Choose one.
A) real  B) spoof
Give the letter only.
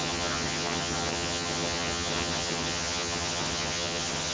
B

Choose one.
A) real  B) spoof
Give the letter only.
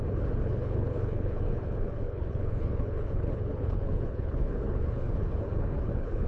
B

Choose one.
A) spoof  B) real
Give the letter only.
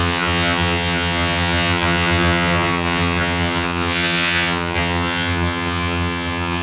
A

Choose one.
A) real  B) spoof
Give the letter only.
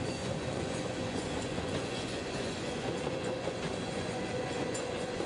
B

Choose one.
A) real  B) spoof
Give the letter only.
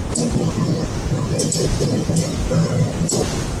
A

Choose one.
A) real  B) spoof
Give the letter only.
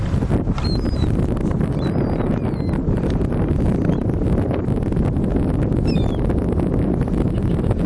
A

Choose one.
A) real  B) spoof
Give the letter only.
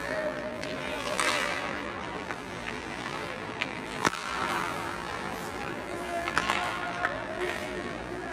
B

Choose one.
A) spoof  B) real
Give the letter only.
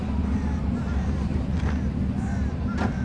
B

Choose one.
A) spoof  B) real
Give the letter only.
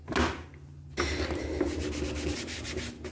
B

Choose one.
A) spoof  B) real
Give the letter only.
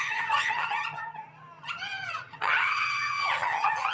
A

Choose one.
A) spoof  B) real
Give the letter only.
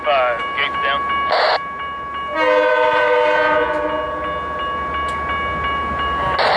B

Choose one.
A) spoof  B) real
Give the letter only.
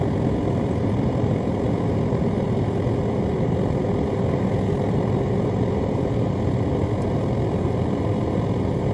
B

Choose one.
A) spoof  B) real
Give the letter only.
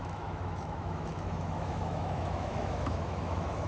A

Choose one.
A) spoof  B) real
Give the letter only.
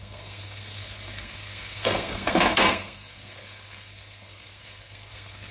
A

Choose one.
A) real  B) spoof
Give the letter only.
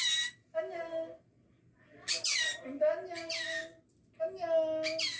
A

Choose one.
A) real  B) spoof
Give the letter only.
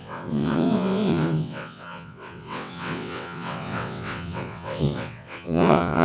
B